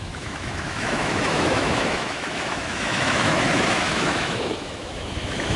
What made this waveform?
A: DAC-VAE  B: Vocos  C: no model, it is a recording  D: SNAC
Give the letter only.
A